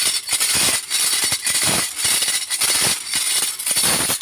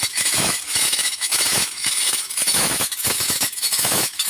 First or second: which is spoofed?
second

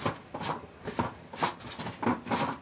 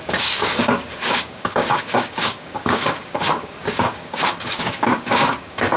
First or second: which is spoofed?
second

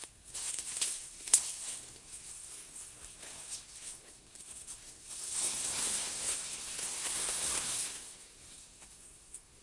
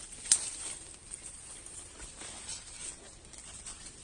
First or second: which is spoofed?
first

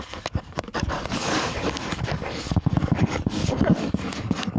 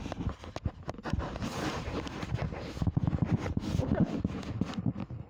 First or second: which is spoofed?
first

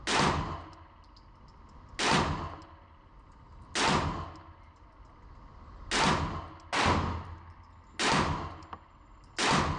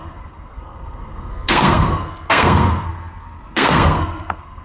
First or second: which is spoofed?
second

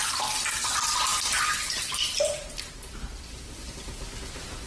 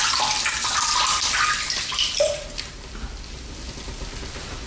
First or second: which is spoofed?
first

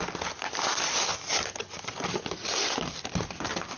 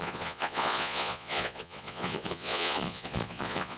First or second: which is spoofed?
second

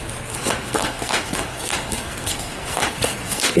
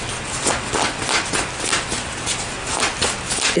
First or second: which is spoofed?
first